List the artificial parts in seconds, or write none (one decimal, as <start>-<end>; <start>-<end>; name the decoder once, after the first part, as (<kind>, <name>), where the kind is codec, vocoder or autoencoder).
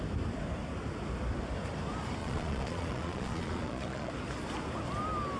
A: 2.2-4.1 (vocoder, Vocos)